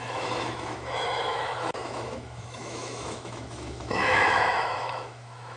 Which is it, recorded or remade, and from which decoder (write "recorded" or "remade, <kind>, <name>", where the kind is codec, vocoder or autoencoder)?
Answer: remade, autoencoder, DAC-VAE